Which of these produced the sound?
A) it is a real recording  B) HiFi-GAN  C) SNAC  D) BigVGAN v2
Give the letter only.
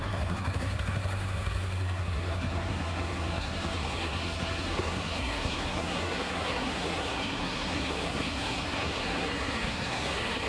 C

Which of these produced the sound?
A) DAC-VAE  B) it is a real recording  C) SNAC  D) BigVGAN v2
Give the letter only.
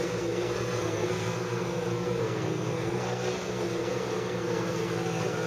C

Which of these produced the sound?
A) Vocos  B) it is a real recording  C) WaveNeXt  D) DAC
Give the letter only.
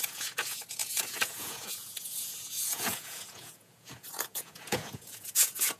A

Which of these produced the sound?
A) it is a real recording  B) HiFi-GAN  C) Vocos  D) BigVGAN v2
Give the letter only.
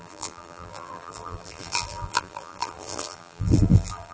D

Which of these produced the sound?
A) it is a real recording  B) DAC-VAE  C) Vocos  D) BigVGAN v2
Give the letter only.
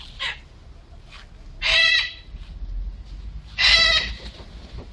A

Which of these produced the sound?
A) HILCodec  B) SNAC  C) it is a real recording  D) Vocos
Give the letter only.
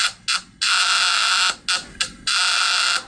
C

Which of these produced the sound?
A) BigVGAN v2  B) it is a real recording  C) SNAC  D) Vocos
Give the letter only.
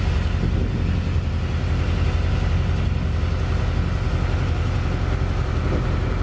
B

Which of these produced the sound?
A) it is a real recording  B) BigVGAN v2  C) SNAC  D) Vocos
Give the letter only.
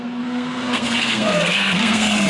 C